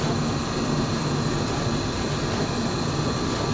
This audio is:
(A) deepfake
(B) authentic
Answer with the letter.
B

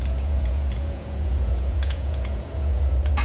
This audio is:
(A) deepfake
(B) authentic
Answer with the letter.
A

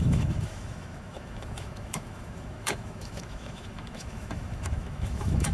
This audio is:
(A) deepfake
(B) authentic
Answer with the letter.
A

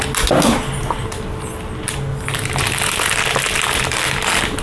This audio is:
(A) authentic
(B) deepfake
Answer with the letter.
A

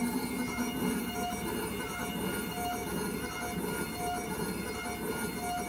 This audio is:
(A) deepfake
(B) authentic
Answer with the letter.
B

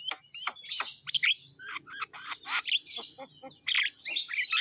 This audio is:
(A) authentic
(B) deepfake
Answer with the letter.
A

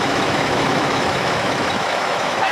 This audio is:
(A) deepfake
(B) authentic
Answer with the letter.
A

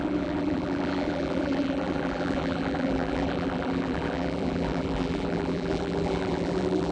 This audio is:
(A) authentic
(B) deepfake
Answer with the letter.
B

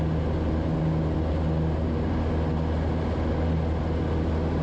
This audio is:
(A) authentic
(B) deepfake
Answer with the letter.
A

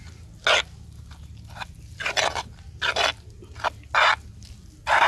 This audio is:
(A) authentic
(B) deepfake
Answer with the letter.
A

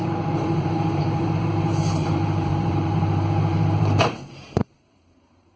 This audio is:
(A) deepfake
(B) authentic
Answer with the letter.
A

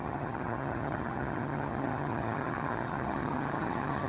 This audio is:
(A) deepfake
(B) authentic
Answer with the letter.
A